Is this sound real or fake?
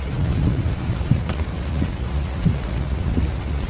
fake